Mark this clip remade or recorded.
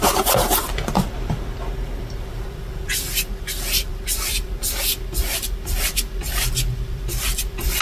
remade